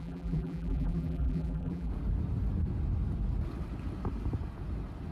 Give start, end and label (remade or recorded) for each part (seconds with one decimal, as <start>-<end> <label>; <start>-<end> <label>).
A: 0.0-1.9 remade; 1.9-5.1 recorded